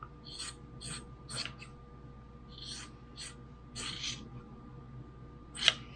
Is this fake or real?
real